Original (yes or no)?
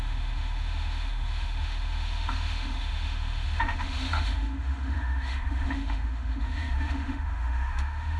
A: no